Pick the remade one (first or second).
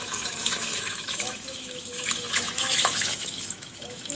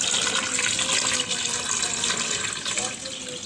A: first